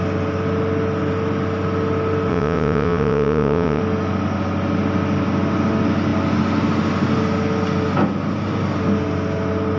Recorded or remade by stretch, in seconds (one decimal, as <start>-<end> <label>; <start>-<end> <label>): 0.0-2.3 recorded; 2.3-3.8 remade; 3.8-9.8 recorded